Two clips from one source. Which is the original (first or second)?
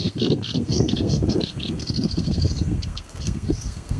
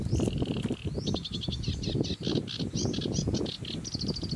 second